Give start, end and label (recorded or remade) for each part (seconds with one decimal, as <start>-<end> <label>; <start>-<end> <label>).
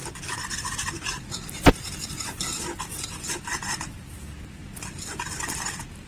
0.0-6.1 recorded